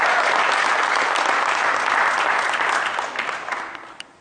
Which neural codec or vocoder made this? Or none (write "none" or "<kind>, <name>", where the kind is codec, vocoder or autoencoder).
none